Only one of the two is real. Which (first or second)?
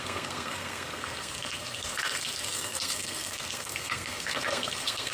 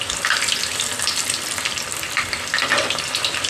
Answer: second